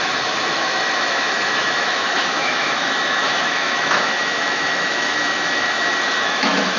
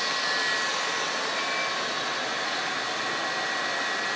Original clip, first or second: second